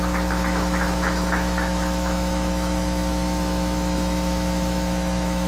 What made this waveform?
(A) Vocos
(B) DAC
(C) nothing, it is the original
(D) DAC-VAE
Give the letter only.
D